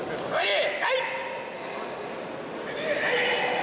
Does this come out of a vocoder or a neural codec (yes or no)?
no